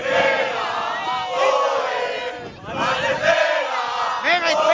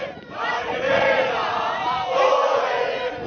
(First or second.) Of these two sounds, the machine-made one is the second